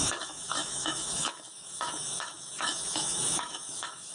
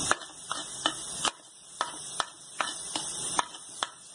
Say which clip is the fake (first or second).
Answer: first